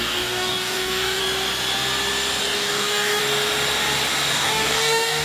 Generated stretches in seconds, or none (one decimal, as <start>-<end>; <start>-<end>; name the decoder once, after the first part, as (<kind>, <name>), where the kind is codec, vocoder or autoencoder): 0.0-1.2 (codec, DAC); 2.4-3.2; 4.3-5.2